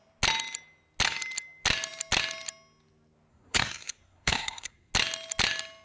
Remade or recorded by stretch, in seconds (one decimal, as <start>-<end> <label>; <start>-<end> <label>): 0.0-3.3 recorded; 3.3-4.9 remade; 4.9-5.8 recorded